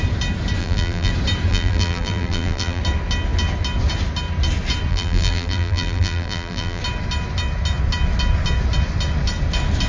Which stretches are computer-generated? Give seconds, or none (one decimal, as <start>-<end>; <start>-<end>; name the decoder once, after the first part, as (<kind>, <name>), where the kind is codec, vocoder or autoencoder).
0.6-1.1 (vocoder, BigVGAN v2); 1.5-2.8; 4.9-6.8